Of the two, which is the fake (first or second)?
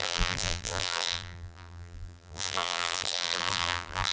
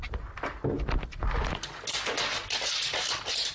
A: first